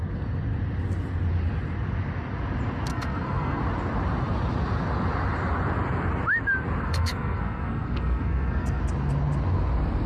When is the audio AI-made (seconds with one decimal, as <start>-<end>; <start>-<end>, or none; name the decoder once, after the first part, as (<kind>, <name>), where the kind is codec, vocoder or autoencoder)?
2.9-3.6 (codec, SNAC); 6.8-8.8